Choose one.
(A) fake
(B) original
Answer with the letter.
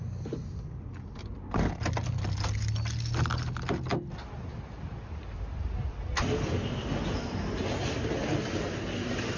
B